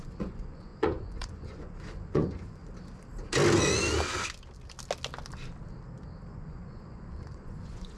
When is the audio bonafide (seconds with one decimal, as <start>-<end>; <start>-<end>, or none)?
2.6-6.3

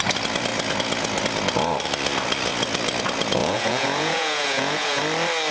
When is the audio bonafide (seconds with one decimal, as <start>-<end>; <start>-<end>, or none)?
0.0-3.4; 5.0-5.5

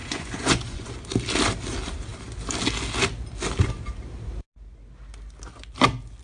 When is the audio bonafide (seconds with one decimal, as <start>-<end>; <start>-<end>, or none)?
0.9-6.2

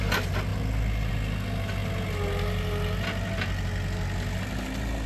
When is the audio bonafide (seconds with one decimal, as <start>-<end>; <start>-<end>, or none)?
0.0-5.1

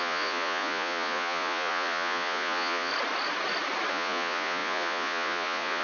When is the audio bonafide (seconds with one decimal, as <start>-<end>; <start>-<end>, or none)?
2.9-3.9

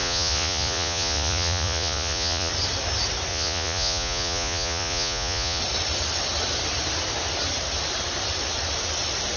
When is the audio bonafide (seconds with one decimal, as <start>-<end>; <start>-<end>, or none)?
2.5-3.3; 5.6-9.4

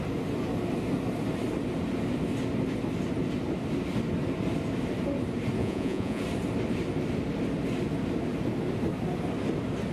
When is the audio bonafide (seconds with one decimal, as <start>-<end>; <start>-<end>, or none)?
0.0-5.6; 6.2-9.9